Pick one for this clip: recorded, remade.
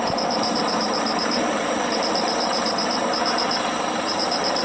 remade